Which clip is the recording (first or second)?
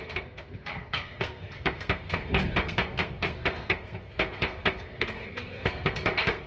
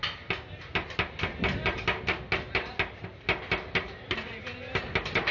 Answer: second